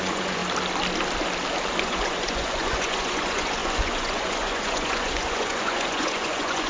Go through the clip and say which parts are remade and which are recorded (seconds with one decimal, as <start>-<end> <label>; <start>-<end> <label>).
0.0-0.4 remade; 0.4-1.8 recorded; 1.8-6.7 remade